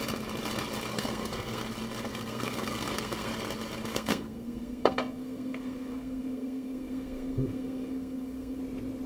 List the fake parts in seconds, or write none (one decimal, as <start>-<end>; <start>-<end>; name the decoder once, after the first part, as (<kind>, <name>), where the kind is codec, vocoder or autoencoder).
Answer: 0.9-1.6 (codec, SNAC); 2.1-3.3; 3.9-8.6